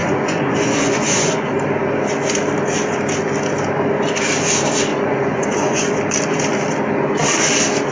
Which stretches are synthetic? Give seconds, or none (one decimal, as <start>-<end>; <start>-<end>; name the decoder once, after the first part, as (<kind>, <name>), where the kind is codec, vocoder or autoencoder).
0.0-1.5 (vocoder, Vocos); 4.9-6.0

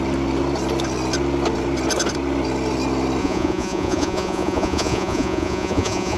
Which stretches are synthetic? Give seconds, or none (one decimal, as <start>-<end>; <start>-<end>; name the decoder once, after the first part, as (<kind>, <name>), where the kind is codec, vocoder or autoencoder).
3.2-6.2 (vocoder, Vocos)

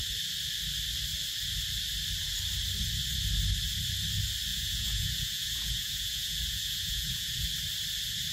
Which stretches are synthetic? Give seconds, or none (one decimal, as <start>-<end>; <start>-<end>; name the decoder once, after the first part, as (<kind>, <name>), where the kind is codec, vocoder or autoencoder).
4.5-7.4 (vocoder, Vocos)

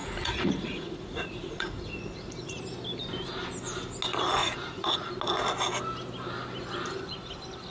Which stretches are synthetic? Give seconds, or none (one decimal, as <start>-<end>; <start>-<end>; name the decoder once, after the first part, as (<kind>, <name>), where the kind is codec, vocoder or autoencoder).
0.0-2.6 (vocoder, Vocos); 4.4-5.1

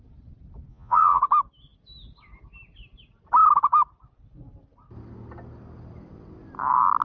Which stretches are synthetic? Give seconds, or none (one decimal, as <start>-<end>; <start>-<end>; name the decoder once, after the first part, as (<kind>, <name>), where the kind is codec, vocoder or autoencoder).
0.7-1.2 (vocoder, Vocos)